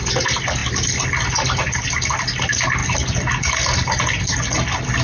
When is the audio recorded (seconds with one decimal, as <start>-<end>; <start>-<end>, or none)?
0.0-5.0

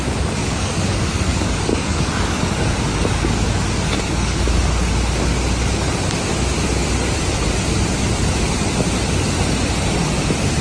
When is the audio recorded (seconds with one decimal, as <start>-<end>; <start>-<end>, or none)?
0.0-0.4; 4.4-10.6

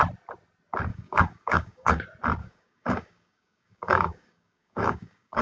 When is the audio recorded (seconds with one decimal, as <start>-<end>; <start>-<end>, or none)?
0.0-0.9; 2.0-2.4

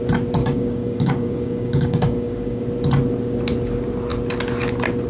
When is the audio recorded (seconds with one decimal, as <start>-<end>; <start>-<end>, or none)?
0.0-0.4; 2.6-5.1

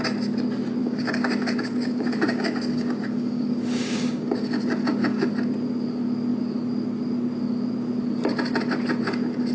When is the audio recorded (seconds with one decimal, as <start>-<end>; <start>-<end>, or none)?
0.0-0.8; 5.3-9.5

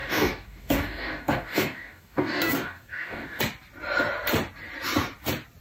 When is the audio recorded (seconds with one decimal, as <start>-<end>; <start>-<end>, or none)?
3.4-5.6

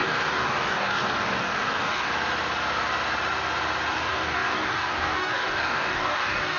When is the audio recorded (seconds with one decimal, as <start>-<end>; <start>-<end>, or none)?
2.1-3.9

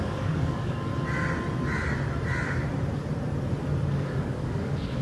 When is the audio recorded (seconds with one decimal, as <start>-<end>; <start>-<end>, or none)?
0.9-3.9